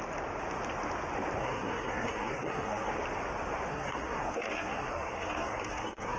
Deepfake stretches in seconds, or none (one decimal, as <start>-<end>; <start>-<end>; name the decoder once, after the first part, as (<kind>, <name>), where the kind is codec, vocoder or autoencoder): 1.4-2.9 (codec, SNAC); 3.7-6.2